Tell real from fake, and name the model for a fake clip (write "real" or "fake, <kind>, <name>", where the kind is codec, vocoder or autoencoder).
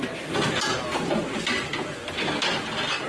real